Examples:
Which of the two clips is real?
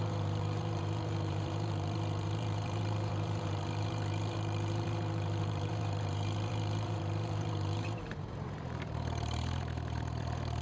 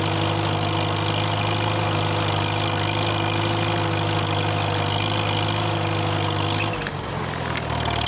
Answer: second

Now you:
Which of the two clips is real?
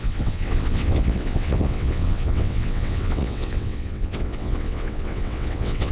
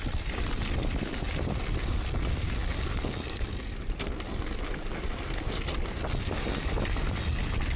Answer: second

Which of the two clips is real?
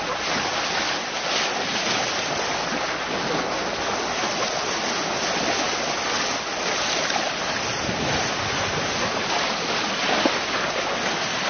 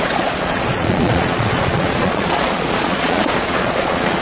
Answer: first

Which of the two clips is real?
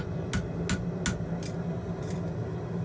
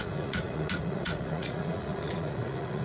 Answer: first